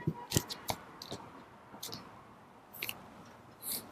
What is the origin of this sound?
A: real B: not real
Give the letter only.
A